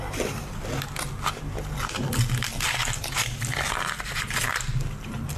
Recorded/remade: recorded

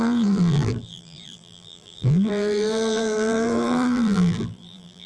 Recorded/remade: remade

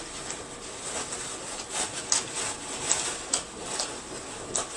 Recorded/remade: recorded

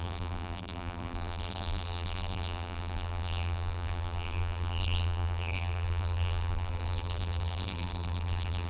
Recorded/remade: remade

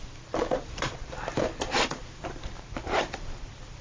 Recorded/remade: remade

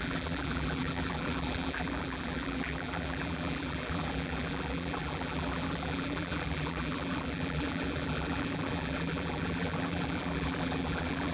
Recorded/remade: remade